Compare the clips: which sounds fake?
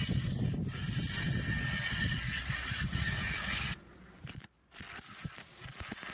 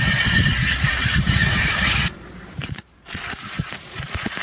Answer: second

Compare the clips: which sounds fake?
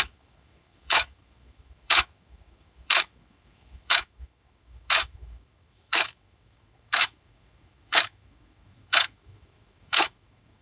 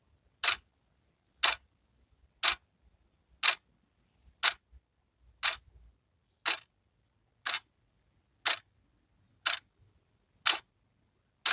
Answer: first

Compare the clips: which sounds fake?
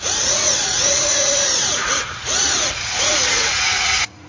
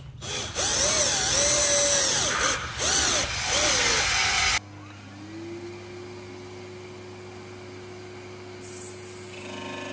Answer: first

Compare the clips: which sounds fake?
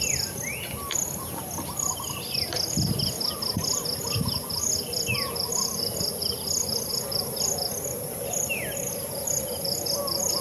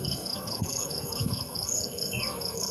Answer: second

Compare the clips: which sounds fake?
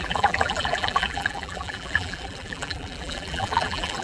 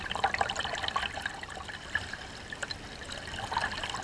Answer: first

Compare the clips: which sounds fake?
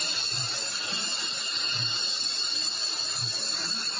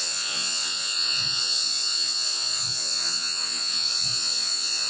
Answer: second